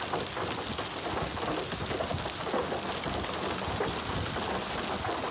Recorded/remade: recorded